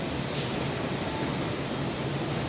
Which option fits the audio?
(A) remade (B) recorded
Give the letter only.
B